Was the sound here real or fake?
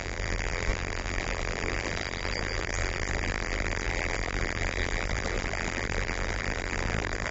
fake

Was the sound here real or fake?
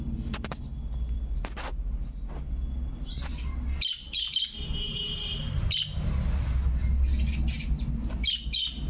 real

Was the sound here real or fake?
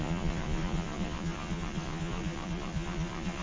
fake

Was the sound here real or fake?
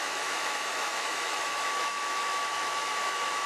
fake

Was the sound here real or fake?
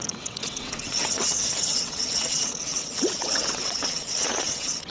fake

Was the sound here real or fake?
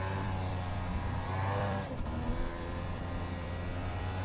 fake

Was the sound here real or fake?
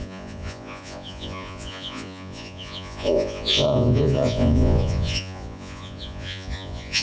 fake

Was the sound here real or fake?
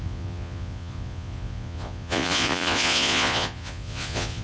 fake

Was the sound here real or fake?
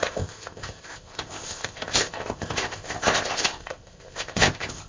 fake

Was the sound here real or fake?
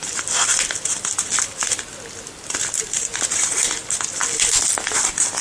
fake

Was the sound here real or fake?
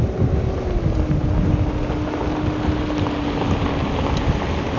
real